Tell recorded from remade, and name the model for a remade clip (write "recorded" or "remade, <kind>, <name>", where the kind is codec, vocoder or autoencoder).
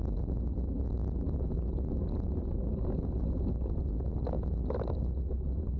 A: recorded